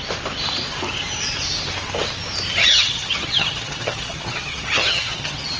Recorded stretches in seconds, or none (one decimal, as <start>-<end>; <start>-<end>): 0.0-2.6